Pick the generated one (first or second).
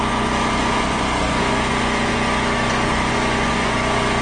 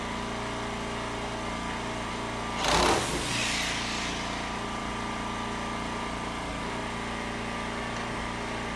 first